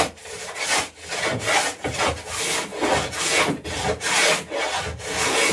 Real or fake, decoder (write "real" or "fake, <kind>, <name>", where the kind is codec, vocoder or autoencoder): real